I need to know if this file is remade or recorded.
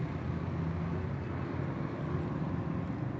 recorded